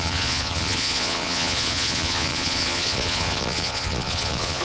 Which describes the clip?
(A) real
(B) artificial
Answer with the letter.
B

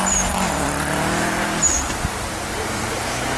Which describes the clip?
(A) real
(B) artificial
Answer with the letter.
A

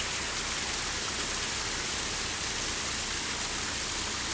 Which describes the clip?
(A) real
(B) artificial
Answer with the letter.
A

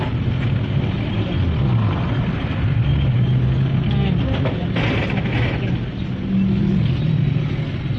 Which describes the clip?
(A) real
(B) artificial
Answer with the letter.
A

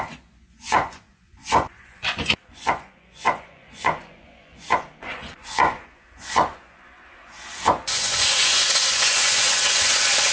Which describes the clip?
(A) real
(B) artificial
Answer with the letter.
B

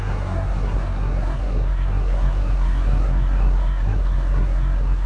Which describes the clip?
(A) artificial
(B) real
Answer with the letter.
A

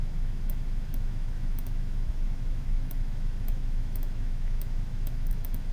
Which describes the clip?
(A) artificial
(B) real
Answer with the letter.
A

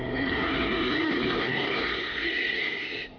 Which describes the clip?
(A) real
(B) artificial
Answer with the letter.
B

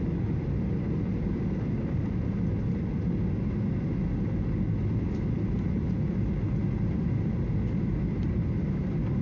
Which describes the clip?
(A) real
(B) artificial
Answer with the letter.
A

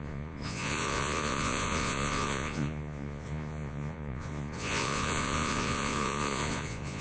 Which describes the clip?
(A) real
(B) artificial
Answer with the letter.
B